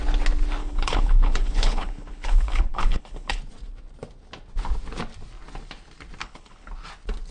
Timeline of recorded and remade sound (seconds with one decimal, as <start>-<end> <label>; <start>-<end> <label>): 0.0-0.6 recorded; 0.6-3.4 remade; 3.4-6.2 recorded; 6.2-6.7 remade; 6.7-7.3 recorded